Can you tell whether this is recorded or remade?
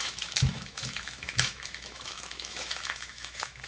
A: remade